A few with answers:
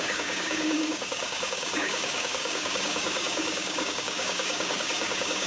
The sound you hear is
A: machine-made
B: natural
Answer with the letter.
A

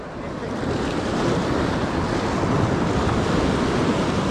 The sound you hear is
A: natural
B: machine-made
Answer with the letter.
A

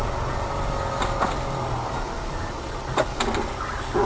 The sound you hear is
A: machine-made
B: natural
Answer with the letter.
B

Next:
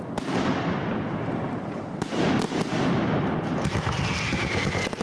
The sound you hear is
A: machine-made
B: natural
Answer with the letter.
B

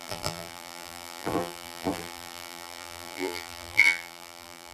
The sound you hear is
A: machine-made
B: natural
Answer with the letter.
A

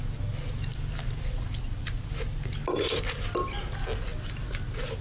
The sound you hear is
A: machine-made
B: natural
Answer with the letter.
B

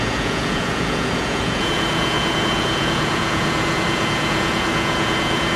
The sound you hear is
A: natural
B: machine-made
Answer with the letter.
B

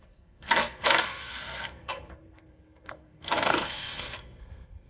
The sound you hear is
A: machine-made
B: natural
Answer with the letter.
A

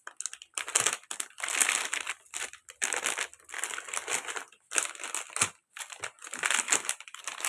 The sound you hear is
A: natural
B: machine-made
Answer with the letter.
A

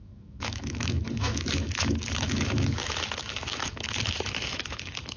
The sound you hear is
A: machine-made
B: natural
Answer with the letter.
A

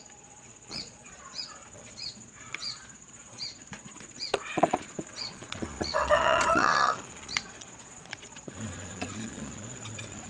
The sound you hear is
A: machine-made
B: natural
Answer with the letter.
A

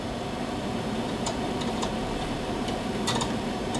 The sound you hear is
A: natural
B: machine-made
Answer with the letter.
B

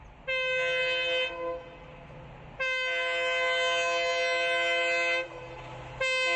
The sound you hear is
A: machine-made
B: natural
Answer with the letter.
B